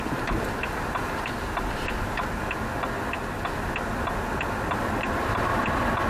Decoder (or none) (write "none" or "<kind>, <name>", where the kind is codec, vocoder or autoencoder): none